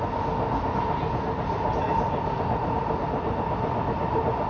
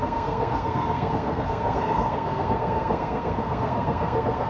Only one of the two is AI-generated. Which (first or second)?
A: second